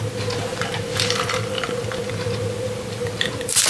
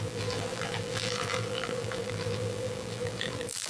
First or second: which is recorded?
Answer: first